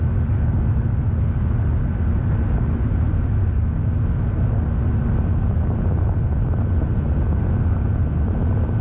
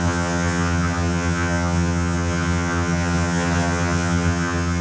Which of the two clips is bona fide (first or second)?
first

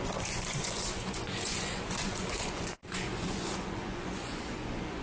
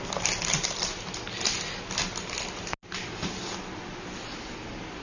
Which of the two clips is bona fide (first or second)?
second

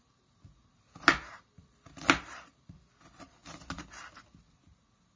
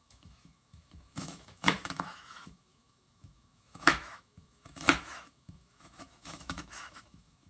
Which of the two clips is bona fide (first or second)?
first